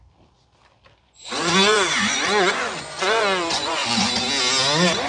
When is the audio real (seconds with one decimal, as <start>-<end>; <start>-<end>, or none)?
0.0-1.0; 4.1-5.1